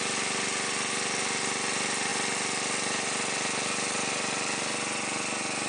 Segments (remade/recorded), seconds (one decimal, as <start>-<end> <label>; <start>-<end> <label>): 0.0-5.7 recorded